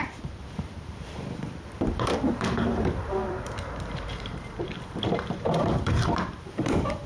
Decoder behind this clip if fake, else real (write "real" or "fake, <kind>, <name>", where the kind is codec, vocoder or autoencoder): fake, vocoder, BigVGAN v2